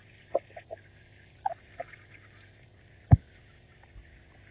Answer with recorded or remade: recorded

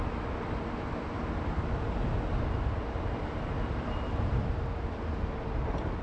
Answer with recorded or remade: recorded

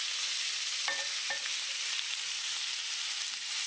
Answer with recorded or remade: recorded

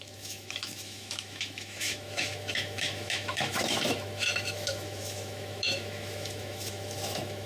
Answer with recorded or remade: remade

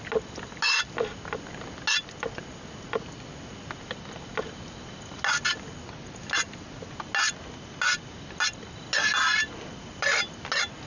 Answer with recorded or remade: recorded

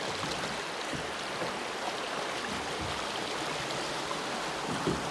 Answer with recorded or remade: recorded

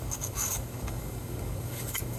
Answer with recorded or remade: remade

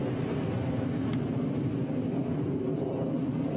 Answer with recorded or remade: recorded